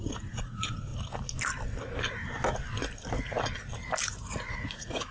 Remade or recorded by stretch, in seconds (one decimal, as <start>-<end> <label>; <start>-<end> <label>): 0.0-0.9 remade; 0.9-4.0 recorded; 4.0-5.1 remade